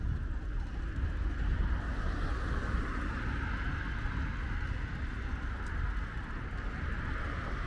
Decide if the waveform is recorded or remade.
recorded